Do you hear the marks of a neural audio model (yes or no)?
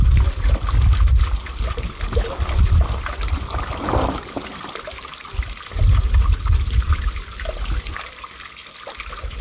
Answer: no